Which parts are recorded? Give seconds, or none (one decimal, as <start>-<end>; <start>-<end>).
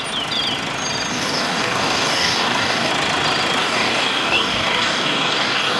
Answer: 0.0-1.1; 2.9-3.6